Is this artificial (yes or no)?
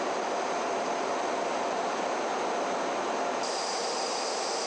no